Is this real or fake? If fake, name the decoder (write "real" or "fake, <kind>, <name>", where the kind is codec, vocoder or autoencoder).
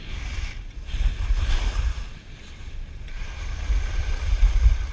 real